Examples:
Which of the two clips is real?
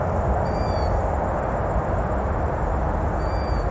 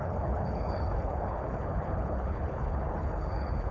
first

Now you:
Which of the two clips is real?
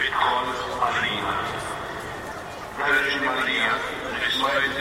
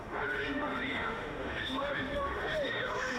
first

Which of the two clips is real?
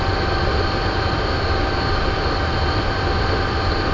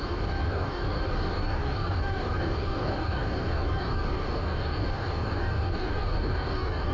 first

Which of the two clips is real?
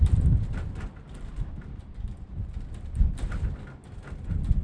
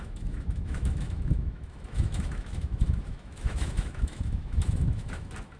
first